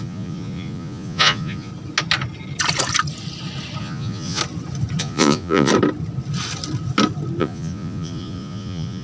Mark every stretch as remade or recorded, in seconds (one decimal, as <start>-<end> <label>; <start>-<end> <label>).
0.0-1.7 remade; 1.7-3.8 recorded; 3.8-4.4 remade; 4.4-5.0 recorded; 5.0-5.7 remade; 5.7-7.4 recorded; 7.4-9.0 remade